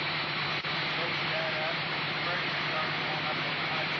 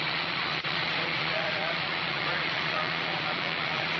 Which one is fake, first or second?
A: second